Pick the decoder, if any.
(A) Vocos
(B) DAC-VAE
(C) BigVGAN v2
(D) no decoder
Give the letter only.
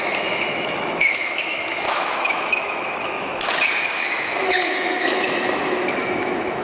B